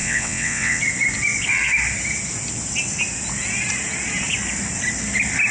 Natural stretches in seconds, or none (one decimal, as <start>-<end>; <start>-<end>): 0.8-5.5